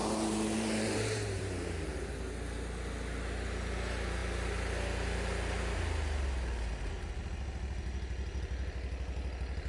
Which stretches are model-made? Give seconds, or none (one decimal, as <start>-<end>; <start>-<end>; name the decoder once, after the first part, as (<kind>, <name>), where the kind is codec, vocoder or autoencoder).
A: 0.0-1.9 (vocoder, BigVGAN v2)